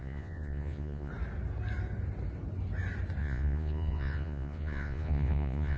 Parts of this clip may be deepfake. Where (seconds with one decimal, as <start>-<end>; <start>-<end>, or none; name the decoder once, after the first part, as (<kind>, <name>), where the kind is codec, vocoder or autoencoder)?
0.0-1.1 (vocoder, Vocos); 3.2-5.8